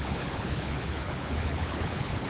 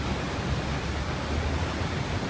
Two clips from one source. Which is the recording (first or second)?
second